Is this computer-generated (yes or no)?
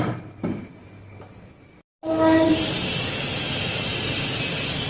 no